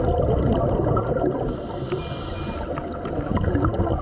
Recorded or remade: recorded